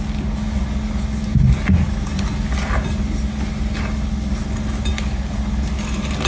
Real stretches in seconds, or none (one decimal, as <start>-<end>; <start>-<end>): 0.0-6.3